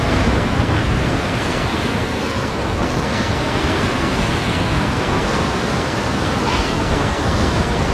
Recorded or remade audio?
remade